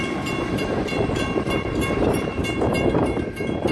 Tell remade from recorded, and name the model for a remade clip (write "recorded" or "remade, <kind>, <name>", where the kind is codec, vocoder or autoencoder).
remade, vocoder, BigVGAN v2